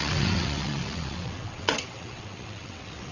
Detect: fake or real fake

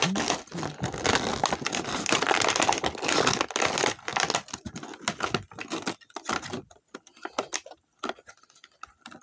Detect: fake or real real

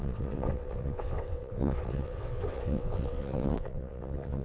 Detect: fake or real fake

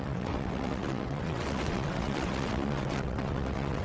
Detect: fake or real fake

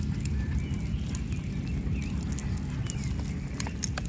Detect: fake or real real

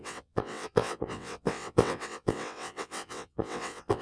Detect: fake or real fake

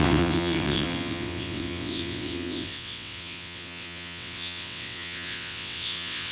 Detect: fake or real fake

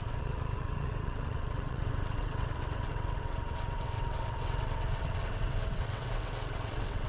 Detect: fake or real fake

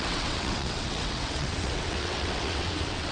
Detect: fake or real fake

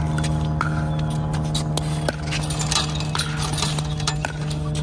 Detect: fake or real real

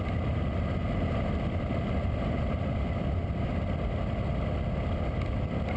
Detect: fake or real real